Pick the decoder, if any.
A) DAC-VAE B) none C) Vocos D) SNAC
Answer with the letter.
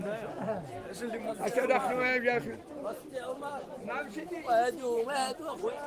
B